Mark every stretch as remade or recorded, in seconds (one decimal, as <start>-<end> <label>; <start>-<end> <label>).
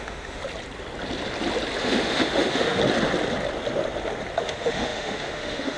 0.0-0.4 remade; 0.4-1.8 recorded; 1.8-2.8 remade; 2.8-4.4 recorded; 4.4-5.8 remade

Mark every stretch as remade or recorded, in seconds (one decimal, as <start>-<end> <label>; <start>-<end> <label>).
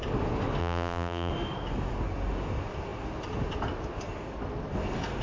0.0-0.6 recorded; 0.6-1.3 remade; 1.3-5.2 recorded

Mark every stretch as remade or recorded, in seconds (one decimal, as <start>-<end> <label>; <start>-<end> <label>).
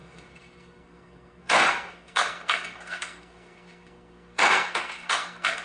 0.0-5.6 remade